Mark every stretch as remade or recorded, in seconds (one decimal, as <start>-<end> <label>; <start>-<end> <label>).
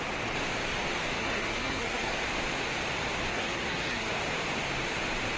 0.0-1.2 recorded; 1.2-2.1 remade; 2.1-3.3 recorded; 3.3-4.1 remade; 4.1-5.4 recorded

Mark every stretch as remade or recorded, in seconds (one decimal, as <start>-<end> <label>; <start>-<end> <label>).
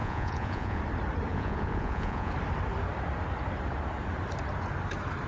0.0-0.8 remade; 0.8-1.3 recorded; 1.3-2.3 remade; 2.3-5.3 recorded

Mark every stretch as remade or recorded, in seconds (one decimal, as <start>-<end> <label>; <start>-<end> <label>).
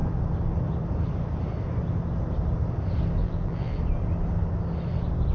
0.0-3.2 recorded; 3.2-3.8 remade; 3.8-5.3 recorded